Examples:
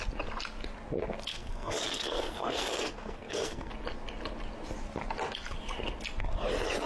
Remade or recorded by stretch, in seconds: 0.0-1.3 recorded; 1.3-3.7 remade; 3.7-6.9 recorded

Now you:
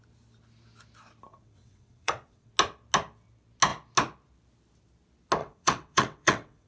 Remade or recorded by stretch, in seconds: 0.0-1.3 recorded; 1.3-2.5 remade; 2.5-5.4 recorded; 5.4-6.7 remade

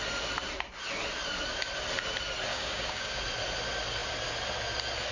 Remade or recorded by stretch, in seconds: 0.0-2.5 recorded; 2.5-3.2 remade; 3.2-5.1 recorded

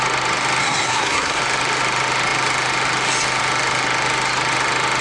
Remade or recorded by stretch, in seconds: 0.0-0.6 recorded; 0.6-1.4 remade; 1.4-5.0 recorded